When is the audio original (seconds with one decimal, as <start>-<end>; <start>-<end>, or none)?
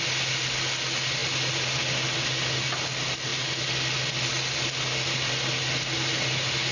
0.0-6.7